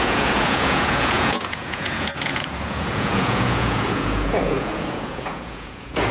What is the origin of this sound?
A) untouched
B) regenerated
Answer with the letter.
B